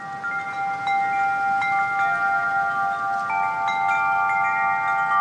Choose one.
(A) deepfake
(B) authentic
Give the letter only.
B